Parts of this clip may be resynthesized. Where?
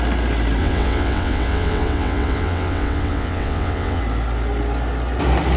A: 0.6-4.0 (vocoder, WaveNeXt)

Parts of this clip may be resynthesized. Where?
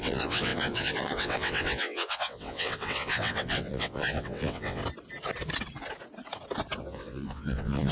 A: 0.0-4.8 (vocoder, WaveNeXt); 6.8-7.9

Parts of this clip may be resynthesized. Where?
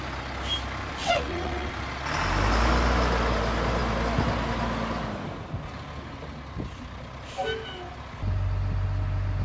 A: 1.0-1.7 (vocoder, WaveNeXt)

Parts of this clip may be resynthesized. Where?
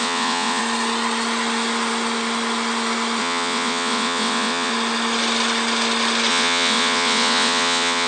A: 0.0-0.6 (vocoder, WaveNeXt); 3.2-4.7; 6.3-8.1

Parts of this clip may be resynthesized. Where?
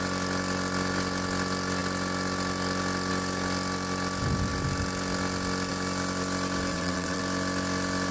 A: 6.7-7.2 (vocoder, WaveNeXt)